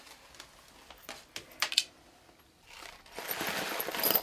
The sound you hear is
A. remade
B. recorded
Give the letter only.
B